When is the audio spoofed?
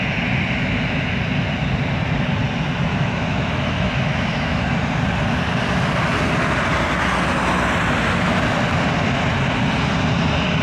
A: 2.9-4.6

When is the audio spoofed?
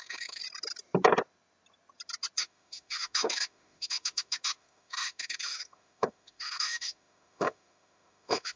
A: 0.0-0.4; 2.4-8.6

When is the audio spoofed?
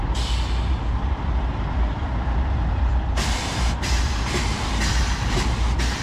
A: none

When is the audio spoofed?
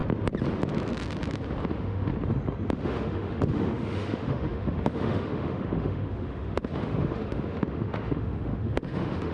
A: 1.7-2.1; 2.7-9.3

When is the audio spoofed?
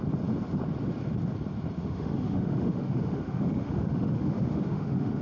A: 1.8-5.2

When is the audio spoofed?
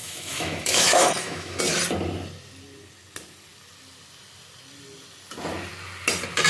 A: 0.0-1.6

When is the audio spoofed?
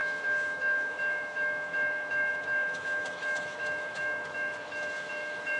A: 0.0-5.6